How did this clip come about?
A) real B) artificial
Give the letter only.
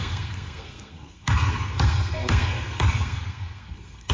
B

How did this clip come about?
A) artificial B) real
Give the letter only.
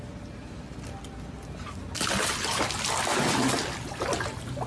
B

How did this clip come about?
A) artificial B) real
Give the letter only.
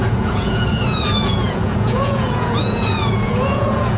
A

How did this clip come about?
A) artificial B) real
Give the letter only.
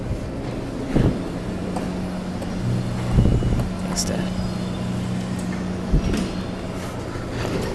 B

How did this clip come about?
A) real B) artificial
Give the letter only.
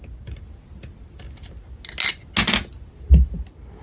A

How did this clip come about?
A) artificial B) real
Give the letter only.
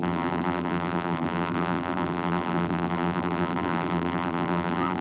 A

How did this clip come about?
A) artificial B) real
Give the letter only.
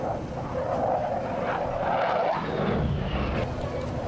B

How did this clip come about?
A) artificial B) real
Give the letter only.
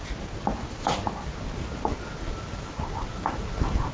B